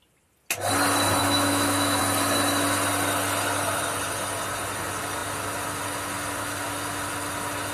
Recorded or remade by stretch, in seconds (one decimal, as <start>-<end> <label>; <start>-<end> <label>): 0.0-1.2 recorded; 1.2-2.0 remade; 2.0-7.7 recorded